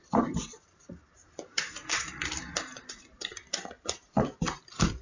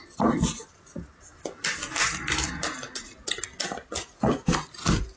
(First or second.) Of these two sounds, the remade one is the first